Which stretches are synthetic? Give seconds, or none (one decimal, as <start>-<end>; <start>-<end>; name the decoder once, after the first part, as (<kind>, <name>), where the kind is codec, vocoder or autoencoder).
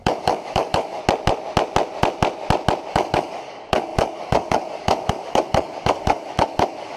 0.0-1.0 (codec, DAC); 2.9-7.0